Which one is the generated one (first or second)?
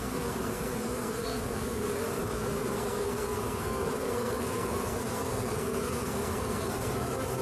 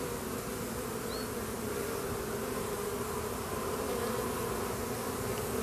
first